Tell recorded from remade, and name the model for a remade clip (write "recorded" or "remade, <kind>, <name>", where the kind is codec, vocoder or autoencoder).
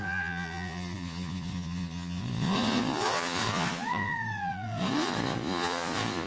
remade, vocoder, Vocos